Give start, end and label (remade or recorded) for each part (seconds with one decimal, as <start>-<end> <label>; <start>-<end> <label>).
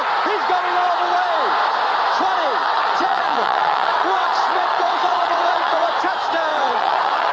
0.0-2.6 recorded; 2.6-5.9 remade; 5.9-6.5 recorded; 6.5-7.3 remade